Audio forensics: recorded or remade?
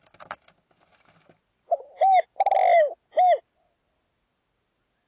recorded